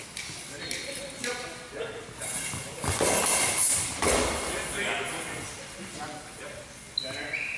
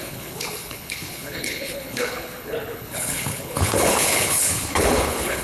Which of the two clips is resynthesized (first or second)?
second